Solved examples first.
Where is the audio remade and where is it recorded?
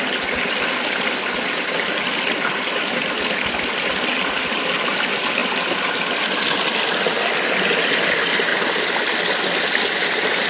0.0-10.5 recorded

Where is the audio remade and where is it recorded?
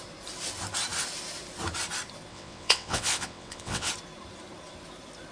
0.0-2.3 recorded; 2.3-3.9 remade; 3.9-5.3 recorded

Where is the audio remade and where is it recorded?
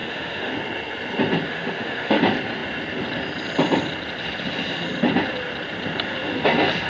0.0-0.5 remade; 0.5-1.5 recorded; 1.5-2.2 remade; 2.2-6.9 recorded